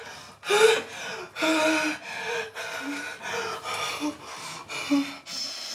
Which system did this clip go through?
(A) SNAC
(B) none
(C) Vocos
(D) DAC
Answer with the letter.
B